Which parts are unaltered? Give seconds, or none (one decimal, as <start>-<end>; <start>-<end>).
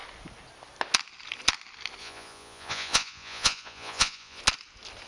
0.0-2.0; 4.4-5.1